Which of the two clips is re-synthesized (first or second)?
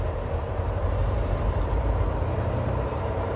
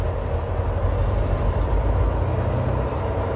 first